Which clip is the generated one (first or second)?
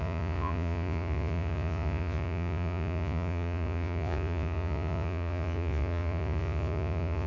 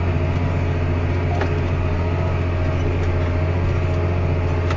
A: first